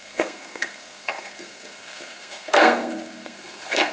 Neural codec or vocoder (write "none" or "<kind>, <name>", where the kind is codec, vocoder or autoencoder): codec, SNAC